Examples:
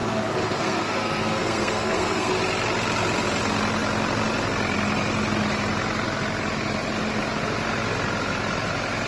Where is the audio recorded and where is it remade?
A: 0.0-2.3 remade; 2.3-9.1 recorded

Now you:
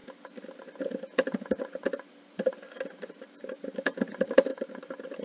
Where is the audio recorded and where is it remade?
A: 0.0-4.5 recorded; 4.5-5.2 remade

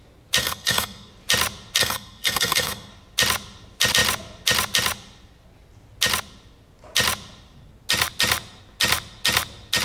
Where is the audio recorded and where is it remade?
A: 0.0-0.4 recorded; 0.4-1.1 remade; 1.1-1.8 recorded; 1.8-2.9 remade; 2.9-9.8 recorded

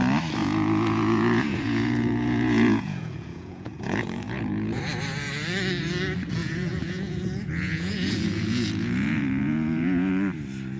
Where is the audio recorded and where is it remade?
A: 0.0-0.4 recorded; 0.4-4.8 remade; 4.8-6.4 recorded; 6.4-10.1 remade; 10.1-10.8 recorded

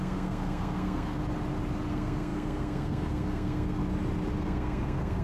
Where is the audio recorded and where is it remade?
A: 0.0-1.2 remade; 1.2-1.9 recorded; 1.9-3.8 remade; 3.8-4.4 recorded; 4.4-5.2 remade

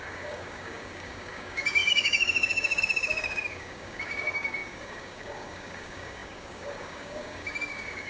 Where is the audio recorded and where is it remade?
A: 0.0-8.1 remade

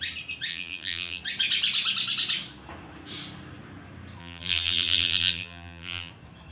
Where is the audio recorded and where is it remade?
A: 0.0-0.5 recorded; 0.5-1.2 remade; 1.2-4.2 recorded; 4.2-6.1 remade; 6.1-6.5 recorded

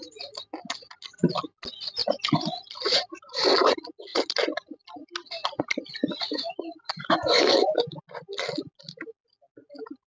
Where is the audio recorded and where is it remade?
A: 0.0-10.1 recorded